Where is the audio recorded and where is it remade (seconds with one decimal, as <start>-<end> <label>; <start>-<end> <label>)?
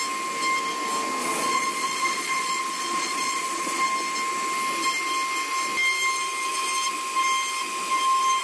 0.0-1.2 recorded; 1.2-3.8 remade; 3.8-8.4 recorded